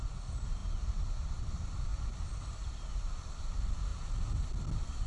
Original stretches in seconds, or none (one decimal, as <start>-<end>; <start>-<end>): 0.0-5.1